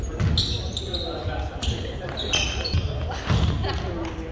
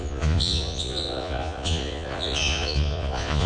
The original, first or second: first